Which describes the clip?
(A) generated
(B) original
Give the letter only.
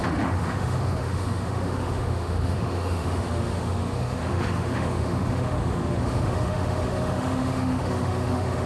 A